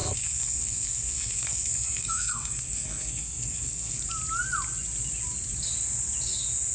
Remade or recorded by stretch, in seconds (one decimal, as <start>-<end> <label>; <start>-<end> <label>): 0.0-4.0 remade; 4.0-6.7 recorded